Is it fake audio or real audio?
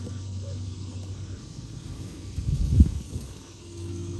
fake